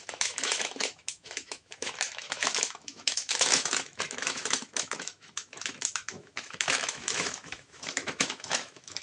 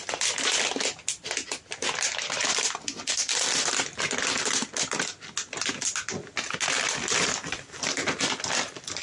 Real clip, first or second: second